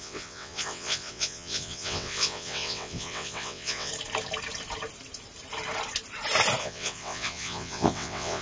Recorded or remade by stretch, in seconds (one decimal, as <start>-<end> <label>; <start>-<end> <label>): 0.0-3.9 remade; 3.9-6.6 recorded; 6.6-8.4 remade